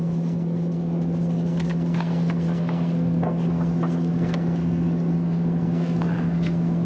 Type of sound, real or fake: fake